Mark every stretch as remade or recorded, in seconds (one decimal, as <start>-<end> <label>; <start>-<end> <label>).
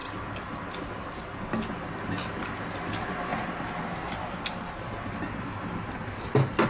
0.0-6.7 recorded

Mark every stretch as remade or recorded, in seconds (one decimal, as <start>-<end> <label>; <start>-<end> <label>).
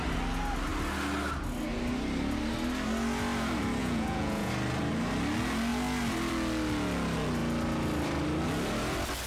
0.0-3.8 recorded; 3.8-4.5 remade; 4.5-9.3 recorded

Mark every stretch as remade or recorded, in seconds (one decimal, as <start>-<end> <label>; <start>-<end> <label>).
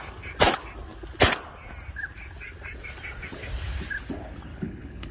0.0-4.5 recorded; 4.5-5.1 remade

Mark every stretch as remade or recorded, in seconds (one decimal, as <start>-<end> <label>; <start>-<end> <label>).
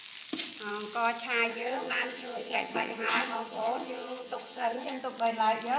0.0-1.5 recorded; 1.5-5.0 remade; 5.0-5.8 recorded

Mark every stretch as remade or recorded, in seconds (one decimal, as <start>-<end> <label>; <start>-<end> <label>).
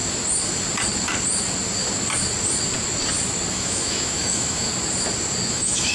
0.0-3.5 recorded; 3.5-4.7 remade; 4.7-5.5 recorded; 5.5-5.9 remade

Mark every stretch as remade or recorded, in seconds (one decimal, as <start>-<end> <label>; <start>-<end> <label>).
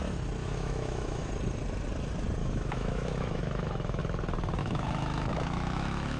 0.0-0.4 recorded; 0.4-1.3 remade; 1.3-2.4 recorded; 2.4-4.0 remade; 4.0-4.6 recorded; 4.6-6.2 remade